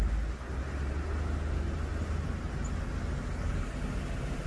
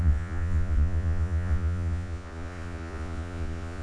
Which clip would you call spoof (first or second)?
second